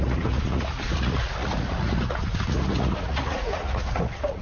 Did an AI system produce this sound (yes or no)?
yes